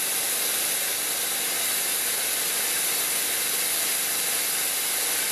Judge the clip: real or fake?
real